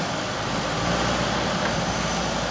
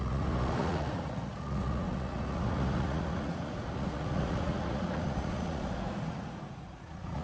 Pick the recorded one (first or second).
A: first